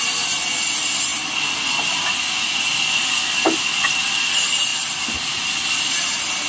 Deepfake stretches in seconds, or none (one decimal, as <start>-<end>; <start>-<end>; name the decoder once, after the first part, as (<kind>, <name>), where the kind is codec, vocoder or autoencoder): none